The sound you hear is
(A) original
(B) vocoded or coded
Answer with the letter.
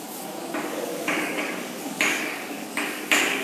B